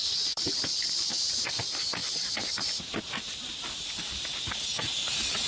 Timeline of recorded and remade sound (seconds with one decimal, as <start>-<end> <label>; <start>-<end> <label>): 0.0-1.6 remade; 1.6-2.0 recorded; 2.0-4.4 remade; 4.4-5.5 recorded